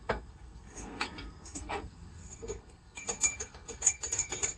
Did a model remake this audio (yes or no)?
yes